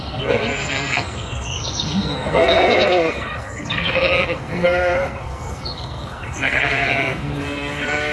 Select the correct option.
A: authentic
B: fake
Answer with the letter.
B